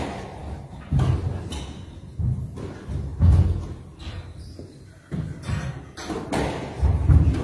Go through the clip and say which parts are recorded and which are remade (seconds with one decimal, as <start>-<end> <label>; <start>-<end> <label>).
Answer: 0.0-7.4 recorded